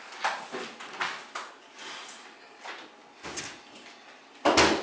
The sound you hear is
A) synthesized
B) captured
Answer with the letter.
B